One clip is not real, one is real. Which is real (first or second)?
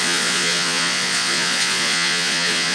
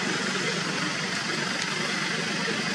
second